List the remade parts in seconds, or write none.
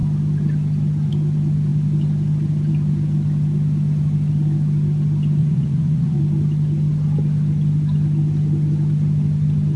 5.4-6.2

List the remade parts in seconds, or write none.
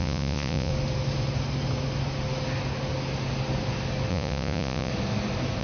0.0-0.7; 4.1-4.9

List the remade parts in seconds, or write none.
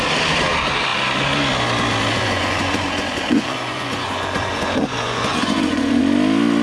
2.1-6.0